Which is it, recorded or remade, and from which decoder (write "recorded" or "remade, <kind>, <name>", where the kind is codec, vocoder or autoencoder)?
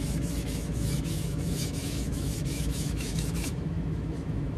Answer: remade, autoencoder, DAC-VAE